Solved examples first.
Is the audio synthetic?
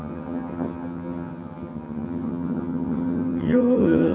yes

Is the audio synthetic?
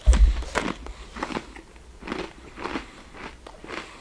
no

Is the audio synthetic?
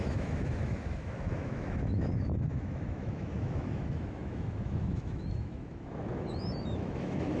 yes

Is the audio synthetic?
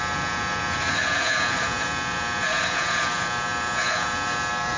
yes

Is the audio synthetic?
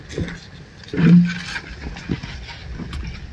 no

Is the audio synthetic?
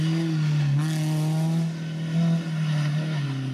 no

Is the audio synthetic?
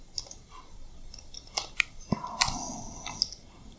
no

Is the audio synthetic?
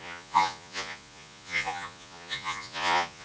yes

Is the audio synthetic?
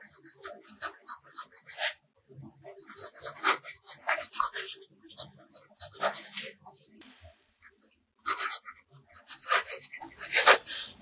no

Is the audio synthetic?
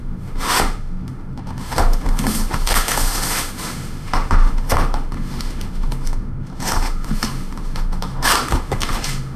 yes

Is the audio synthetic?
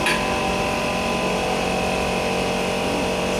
no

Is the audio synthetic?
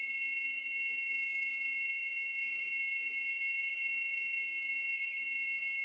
yes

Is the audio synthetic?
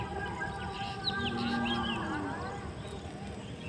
no